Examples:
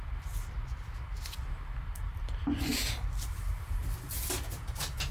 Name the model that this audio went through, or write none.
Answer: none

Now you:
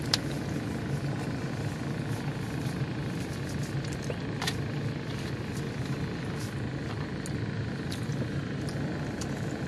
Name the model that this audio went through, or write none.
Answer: none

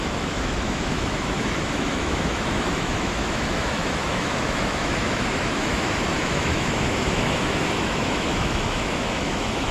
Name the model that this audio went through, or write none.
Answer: autoencoder, DAC-VAE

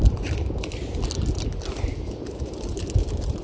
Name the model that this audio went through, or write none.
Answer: none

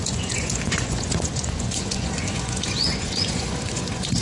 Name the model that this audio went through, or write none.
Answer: vocoder, Vocos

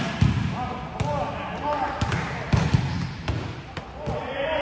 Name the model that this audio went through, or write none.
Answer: none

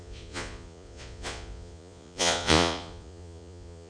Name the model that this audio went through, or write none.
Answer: vocoder, Vocos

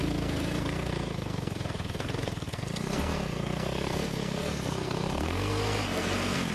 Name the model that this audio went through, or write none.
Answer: codec, SNAC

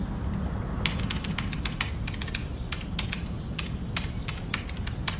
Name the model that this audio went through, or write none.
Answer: none